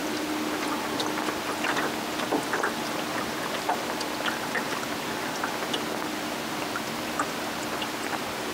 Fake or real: real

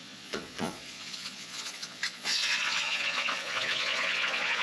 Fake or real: fake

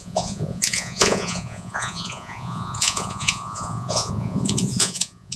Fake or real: fake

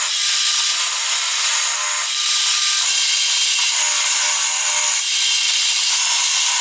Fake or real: real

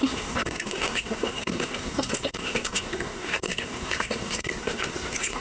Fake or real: fake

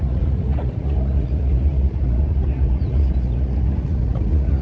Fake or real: fake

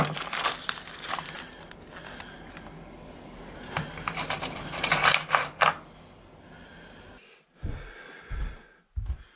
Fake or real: real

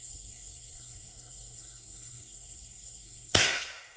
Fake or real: fake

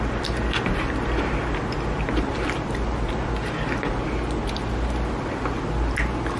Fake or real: real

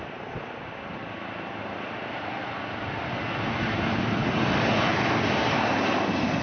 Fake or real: real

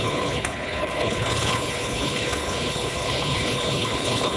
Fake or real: fake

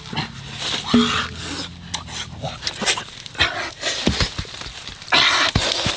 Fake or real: real